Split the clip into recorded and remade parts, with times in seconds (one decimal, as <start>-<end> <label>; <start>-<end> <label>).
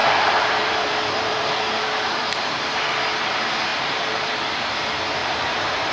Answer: 0.0-2.8 remade; 2.8-3.7 recorded; 3.7-4.3 remade; 4.3-5.2 recorded; 5.2-5.9 remade